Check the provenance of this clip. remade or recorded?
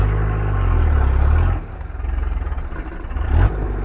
recorded